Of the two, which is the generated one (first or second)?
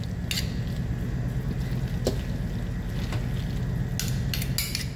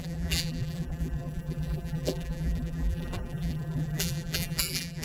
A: second